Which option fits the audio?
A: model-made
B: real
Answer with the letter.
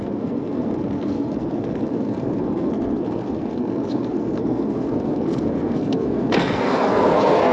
A